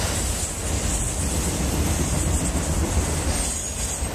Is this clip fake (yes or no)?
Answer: no